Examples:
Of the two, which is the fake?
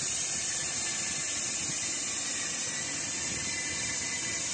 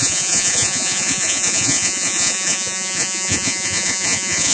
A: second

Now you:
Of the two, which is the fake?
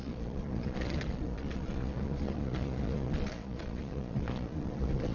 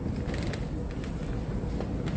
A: first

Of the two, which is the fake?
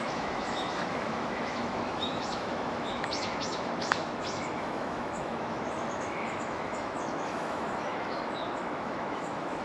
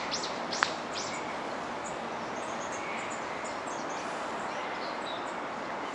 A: first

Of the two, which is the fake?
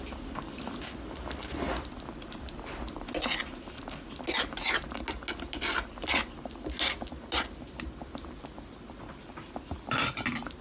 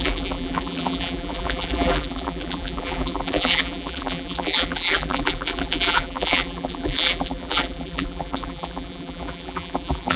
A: second